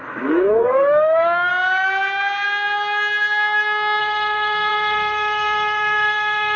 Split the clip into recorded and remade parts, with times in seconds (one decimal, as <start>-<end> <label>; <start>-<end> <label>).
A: 0.0-1.5 remade; 1.5-4.0 recorded; 4.0-6.6 remade

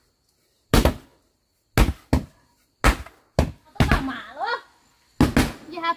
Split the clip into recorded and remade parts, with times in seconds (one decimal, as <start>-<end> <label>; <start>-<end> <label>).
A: 0.0-6.0 recorded

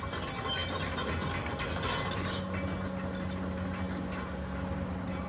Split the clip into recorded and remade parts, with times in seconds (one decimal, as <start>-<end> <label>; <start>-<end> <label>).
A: 0.0-5.3 recorded

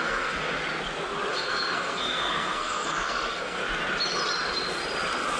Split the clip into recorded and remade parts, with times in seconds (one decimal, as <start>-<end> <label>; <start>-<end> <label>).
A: 0.0-0.6 remade; 0.6-1.3 recorded; 1.3-3.6 remade; 3.6-5.4 recorded

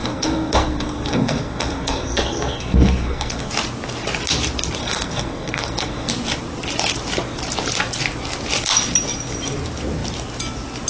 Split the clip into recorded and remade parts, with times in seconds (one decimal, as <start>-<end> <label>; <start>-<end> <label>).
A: 0.0-3.5 remade; 3.5-4.8 recorded; 4.8-6.1 remade; 6.1-10.9 recorded